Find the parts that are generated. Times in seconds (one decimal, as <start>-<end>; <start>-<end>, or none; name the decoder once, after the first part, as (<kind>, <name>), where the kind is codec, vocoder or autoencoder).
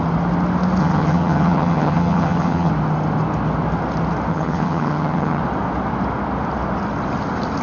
0.8-2.7 (vocoder, HiFi-GAN); 4.3-5.4